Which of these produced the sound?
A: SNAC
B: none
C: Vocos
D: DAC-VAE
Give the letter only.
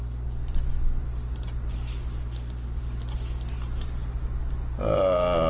B